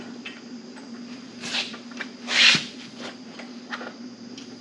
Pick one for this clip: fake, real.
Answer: fake